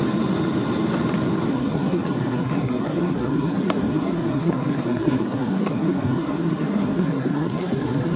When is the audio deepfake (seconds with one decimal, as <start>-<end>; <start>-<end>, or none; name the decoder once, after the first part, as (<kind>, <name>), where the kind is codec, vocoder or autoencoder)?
1.5-8.2 (codec, SNAC)